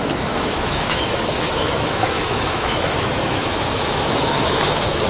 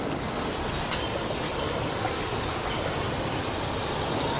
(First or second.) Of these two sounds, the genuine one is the second